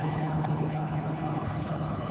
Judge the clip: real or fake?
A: fake